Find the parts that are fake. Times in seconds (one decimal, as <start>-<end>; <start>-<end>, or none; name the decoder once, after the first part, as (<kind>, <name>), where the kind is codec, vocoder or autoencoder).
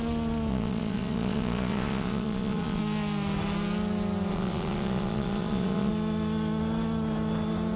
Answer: 0.5-2.8 (vocoder, Vocos); 4.3-5.9